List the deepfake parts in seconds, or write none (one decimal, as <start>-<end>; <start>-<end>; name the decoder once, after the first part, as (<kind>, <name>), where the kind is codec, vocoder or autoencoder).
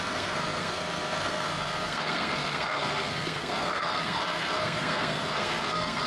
0.0-6.1 (codec, SNAC)